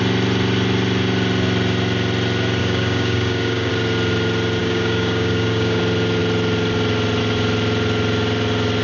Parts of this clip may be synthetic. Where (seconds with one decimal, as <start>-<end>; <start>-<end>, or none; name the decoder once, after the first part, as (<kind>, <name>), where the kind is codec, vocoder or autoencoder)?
2.6-3.7 (codec, DAC); 4.6-5.8